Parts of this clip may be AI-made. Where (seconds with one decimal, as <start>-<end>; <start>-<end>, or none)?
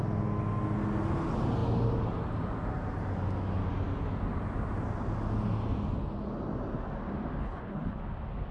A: 7.4-8.0